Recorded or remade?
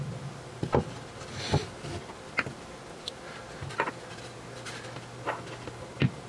recorded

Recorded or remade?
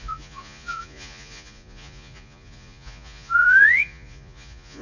remade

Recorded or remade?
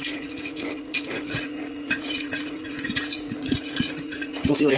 remade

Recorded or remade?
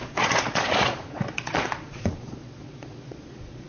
remade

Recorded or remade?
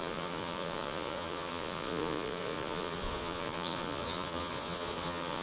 remade